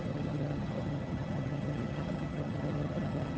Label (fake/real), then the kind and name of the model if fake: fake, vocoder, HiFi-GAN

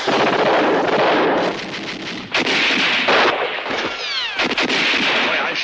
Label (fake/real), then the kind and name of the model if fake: real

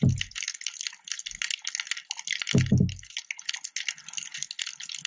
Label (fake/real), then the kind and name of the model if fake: real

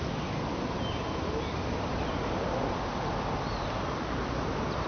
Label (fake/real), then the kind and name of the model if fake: real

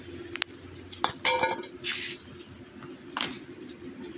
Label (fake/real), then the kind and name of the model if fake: real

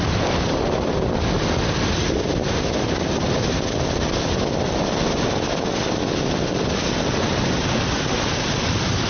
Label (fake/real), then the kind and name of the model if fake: real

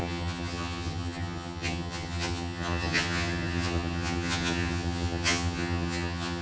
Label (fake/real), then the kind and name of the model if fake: fake, vocoder, HiFi-GAN